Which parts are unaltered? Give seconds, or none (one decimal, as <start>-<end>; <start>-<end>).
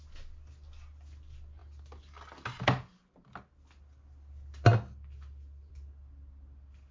0.0-6.9